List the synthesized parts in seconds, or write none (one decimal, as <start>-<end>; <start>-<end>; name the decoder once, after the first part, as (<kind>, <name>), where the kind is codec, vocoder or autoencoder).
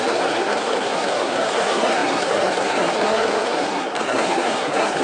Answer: 0.0-5.0 (codec, SNAC)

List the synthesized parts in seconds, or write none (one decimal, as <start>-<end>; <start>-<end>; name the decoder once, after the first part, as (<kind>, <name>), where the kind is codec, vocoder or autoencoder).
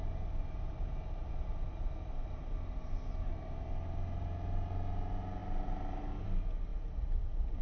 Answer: none